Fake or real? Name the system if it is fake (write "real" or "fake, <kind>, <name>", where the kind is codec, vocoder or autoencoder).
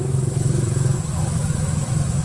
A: fake, autoencoder, DAC-VAE